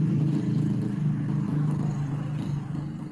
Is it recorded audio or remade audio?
recorded